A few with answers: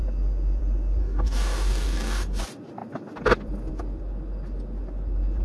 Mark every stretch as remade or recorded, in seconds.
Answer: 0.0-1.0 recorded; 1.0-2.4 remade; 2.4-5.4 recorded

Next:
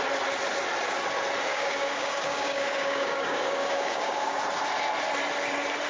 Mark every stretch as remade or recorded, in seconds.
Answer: 0.0-1.5 recorded; 1.5-4.4 remade; 4.4-5.9 recorded

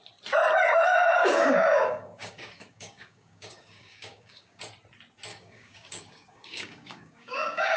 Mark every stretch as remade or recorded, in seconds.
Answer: 0.0-1.2 recorded; 1.2-4.6 remade; 4.6-5.3 recorded; 5.3-7.8 remade

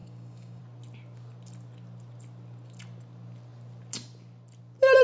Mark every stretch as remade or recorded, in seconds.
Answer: 0.0-0.6 remade; 0.6-5.0 recorded

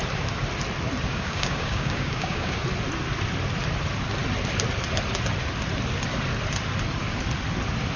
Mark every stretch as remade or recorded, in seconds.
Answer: 0.0-1.1 recorded; 1.1-2.6 remade; 2.6-8.0 recorded

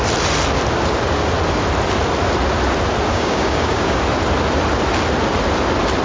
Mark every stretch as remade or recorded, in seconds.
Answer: 0.0-3.1 recorded; 3.1-4.0 remade; 4.0-6.0 recorded

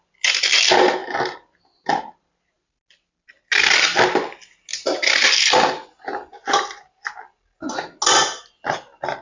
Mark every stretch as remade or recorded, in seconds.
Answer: 0.0-9.2 recorded